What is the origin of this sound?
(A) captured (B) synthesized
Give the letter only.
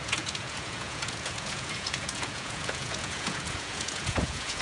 B